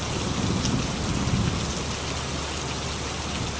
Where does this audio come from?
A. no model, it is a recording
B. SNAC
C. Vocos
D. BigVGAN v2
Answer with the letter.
A